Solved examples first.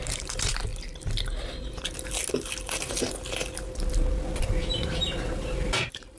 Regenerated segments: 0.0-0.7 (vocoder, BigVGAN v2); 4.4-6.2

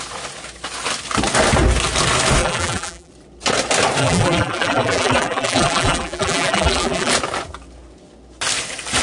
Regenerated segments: 2.4-3.1 (vocoder, BigVGAN v2); 4.0-7.1

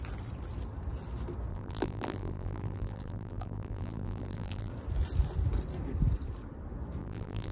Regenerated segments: 1.5-4.7 (vocoder, BigVGAN v2); 7.0-7.5

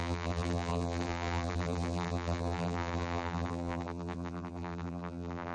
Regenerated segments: 0.0-5.5 (vocoder, BigVGAN v2)

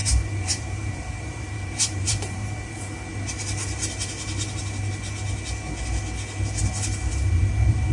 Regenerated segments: 0.0-2.7 (vocoder, BigVGAN v2)

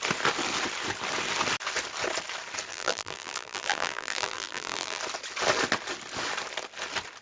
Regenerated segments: 2.7-5.0 (vocoder, BigVGAN v2)

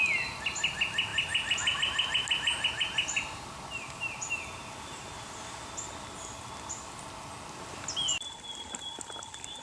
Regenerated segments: none

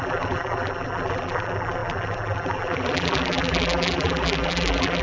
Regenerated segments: 0.0-5.0 (vocoder, BigVGAN v2)